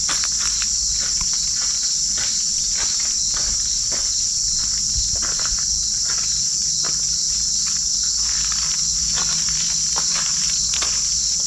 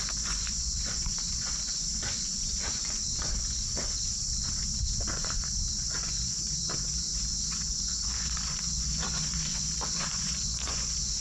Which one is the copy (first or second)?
second